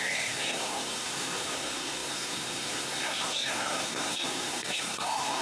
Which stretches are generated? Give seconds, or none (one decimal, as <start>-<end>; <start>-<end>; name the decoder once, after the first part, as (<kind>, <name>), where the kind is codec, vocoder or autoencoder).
0.0-5.4 (codec, SNAC)